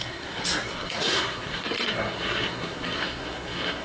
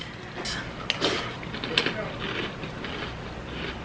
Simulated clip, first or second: first